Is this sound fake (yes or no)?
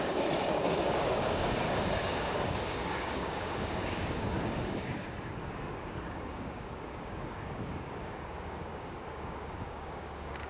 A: yes